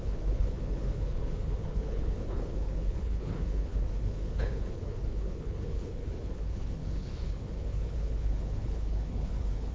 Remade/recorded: remade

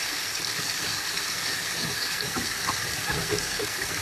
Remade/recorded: remade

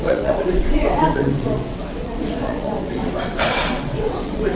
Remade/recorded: remade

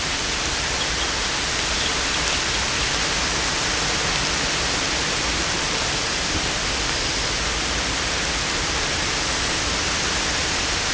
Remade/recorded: recorded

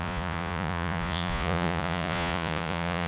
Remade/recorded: remade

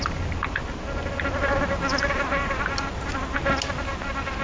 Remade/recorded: recorded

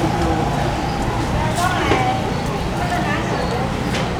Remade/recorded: recorded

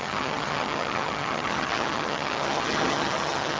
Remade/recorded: remade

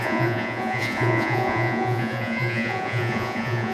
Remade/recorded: remade